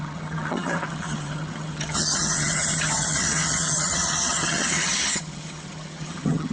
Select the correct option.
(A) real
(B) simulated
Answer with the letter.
B